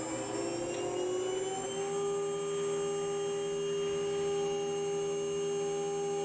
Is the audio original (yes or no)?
yes